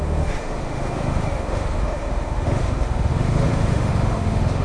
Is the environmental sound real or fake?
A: fake